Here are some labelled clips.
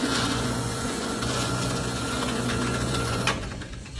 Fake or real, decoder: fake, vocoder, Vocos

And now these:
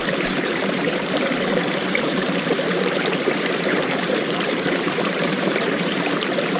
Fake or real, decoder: fake, vocoder, BigVGAN v2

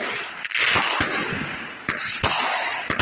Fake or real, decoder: real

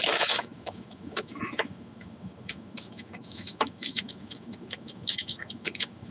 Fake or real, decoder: fake, autoencoder, DAC-VAE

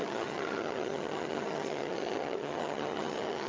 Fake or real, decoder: fake, vocoder, HiFi-GAN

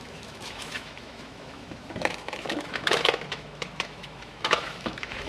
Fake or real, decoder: fake, autoencoder, DAC-VAE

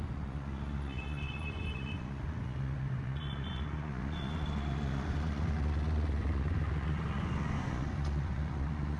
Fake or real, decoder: fake, vocoder, Vocos